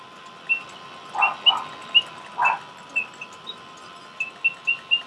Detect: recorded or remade recorded